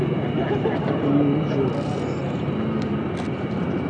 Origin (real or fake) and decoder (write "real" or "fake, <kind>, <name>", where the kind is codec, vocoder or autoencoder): real